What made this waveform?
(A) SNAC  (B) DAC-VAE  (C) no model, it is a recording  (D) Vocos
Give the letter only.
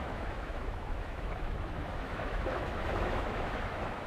B